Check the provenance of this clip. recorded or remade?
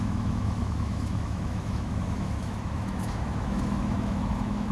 remade